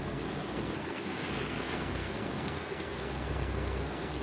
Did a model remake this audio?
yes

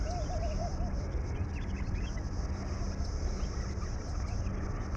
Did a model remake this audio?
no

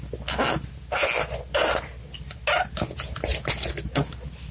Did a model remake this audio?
no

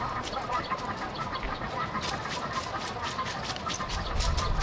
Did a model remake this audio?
no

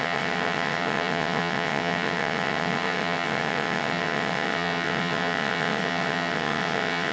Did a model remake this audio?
yes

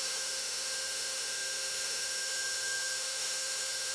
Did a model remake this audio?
yes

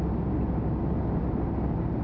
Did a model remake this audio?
no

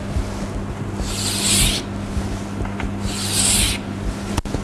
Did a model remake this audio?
no